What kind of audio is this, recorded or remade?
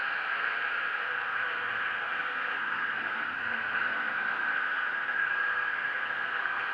remade